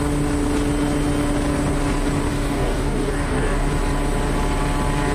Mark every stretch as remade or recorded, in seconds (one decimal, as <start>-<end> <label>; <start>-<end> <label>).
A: 0.0-2.3 recorded; 2.3-3.7 remade; 3.7-5.1 recorded